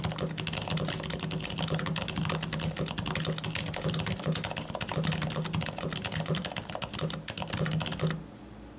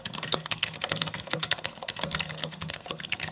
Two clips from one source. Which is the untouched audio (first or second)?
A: first